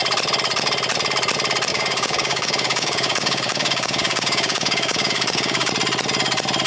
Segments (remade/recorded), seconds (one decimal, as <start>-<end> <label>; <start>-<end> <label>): 0.0-1.7 recorded; 1.7-5.7 remade; 5.7-6.7 recorded